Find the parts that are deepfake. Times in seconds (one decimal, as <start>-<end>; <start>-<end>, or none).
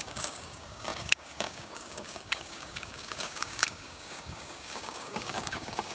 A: 0.0-5.9